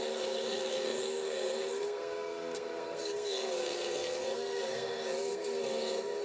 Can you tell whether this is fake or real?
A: fake